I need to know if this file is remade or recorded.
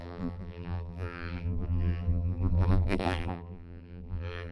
remade